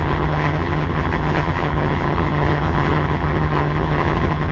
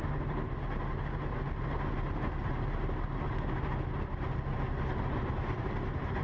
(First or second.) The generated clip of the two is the first